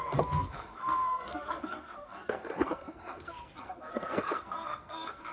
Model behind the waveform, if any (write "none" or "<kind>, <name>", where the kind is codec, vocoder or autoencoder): codec, SNAC